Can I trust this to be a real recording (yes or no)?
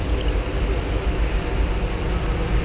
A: yes